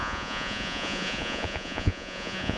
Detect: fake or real fake